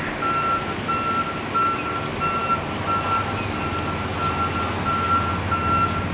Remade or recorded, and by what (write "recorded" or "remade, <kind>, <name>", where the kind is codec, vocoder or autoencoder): recorded